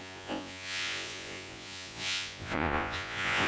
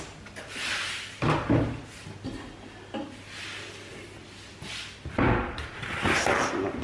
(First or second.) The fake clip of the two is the first